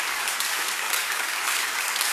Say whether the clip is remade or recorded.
remade